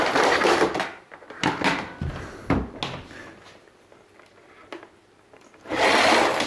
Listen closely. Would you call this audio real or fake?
real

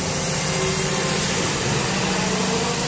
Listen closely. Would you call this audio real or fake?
real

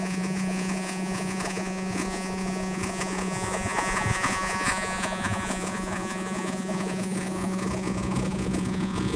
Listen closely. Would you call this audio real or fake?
fake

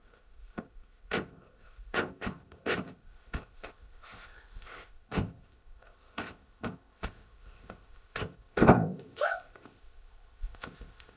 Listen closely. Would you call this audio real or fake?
fake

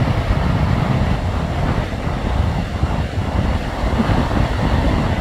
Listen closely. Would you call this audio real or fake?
real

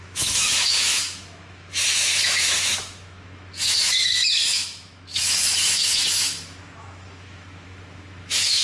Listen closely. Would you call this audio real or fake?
fake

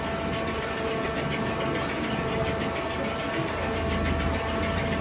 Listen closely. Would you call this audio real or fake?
real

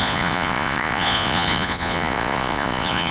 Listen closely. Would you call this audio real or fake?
fake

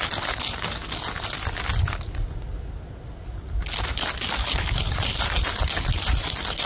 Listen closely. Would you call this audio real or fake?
real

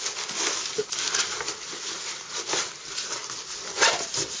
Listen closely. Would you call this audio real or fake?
real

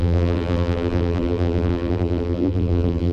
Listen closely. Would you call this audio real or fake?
fake